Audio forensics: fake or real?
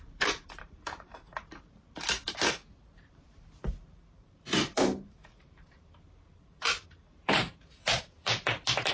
fake